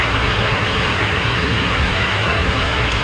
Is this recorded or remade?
remade